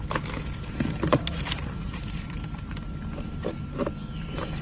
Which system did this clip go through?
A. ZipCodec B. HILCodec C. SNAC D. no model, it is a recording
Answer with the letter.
D